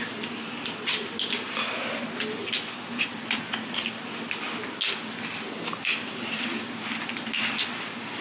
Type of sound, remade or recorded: recorded